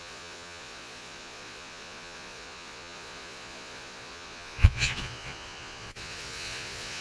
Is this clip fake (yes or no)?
yes